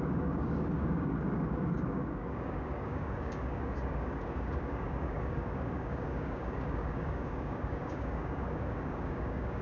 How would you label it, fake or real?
fake